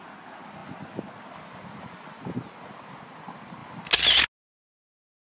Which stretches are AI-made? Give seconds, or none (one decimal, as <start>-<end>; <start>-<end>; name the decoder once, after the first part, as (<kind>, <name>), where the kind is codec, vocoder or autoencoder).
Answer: none